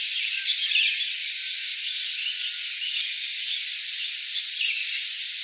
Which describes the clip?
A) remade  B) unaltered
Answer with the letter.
B